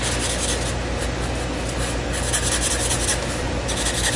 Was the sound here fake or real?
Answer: real